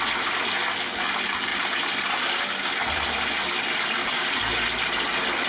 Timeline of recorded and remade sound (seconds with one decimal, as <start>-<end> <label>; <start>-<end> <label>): 0.0-2.8 recorded; 2.8-4.3 remade; 4.3-5.5 recorded